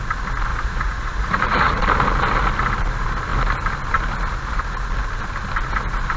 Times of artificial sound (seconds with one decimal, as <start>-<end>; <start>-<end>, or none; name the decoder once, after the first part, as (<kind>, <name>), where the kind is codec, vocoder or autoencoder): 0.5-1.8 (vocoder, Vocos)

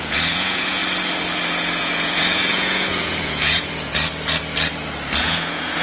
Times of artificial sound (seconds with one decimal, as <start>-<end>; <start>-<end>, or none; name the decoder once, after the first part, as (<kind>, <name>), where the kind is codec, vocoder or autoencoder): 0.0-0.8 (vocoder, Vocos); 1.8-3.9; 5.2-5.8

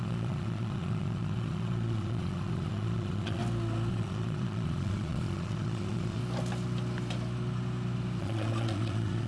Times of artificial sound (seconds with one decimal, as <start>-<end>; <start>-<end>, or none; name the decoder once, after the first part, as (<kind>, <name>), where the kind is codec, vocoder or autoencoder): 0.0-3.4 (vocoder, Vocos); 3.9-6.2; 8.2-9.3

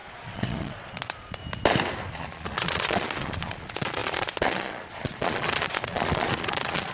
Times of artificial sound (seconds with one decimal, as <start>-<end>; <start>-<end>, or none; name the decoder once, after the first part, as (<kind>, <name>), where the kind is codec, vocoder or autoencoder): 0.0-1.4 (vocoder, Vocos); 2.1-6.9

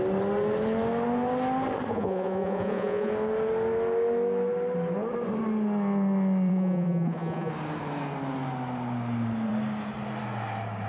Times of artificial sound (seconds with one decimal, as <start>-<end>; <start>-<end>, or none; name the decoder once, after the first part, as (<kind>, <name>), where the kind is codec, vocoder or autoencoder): 1.9-3.1 (vocoder, Vocos); 6.5-7.5

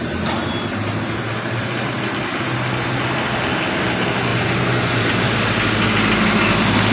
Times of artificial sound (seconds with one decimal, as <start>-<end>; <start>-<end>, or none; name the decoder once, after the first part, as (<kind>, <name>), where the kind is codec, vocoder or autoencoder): 4.3-5.0 (vocoder, Vocos)

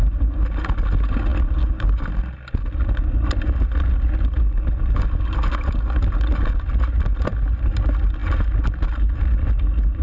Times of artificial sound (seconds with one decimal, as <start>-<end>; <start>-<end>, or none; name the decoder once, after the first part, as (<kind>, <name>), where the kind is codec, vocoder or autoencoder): none